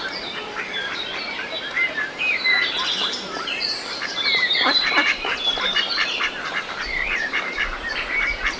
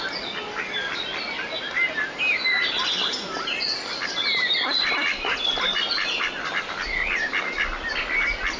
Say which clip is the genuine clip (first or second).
second